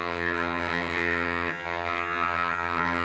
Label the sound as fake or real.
fake